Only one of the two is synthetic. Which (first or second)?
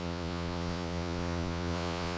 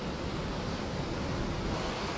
first